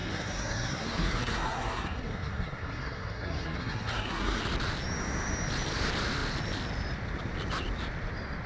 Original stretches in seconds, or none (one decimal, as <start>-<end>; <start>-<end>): 4.4-8.5